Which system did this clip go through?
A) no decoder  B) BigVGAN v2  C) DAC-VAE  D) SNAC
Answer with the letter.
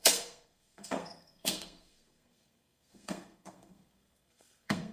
D